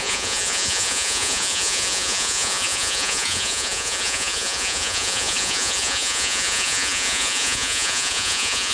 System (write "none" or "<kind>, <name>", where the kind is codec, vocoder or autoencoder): vocoder, Vocos